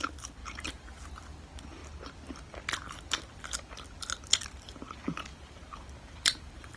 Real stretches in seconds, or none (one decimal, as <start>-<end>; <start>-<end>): 0.0-0.4; 1.0-5.3